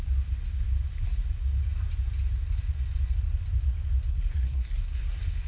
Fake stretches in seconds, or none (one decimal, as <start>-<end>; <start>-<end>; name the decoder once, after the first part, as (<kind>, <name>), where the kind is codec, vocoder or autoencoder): 4.1-5.5 (codec, SNAC)